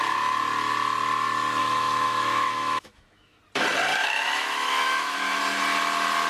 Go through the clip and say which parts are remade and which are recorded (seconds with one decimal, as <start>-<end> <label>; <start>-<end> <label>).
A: 0.0-1.6 recorded; 1.6-3.4 remade; 3.4-4.0 recorded; 4.0-5.4 remade; 5.4-6.3 recorded